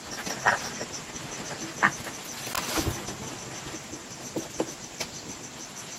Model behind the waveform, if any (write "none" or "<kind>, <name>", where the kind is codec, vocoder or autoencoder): none